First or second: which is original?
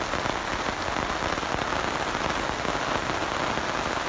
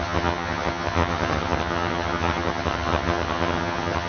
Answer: first